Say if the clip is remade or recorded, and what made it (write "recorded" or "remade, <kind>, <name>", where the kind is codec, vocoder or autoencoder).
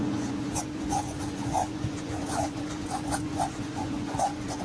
remade, vocoder, Vocos